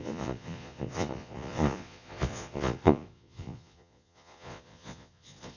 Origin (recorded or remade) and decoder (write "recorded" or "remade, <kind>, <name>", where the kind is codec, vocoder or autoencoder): remade, vocoder, Vocos